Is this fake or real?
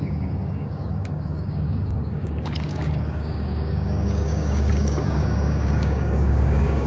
fake